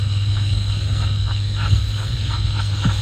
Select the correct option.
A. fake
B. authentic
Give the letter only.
A